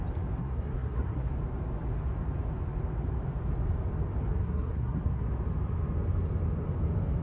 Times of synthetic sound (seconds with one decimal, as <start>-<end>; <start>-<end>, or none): 0.4-1.3; 4.3-5.2